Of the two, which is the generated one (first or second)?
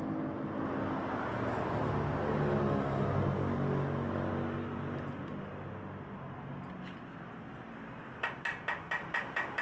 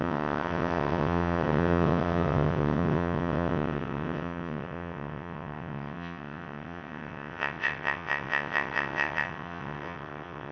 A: second